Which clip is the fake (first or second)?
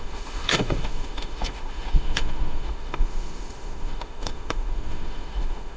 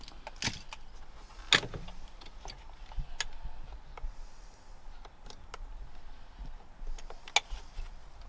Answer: first